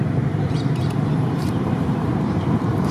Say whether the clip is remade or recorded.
remade